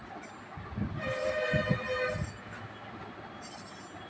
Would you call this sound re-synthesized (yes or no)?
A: no